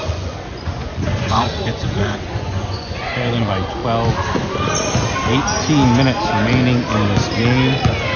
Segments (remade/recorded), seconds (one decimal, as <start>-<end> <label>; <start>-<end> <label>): 0.0-3.8 remade; 3.8-8.2 recorded